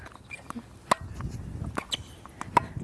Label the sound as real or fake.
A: real